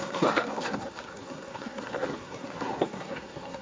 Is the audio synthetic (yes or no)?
yes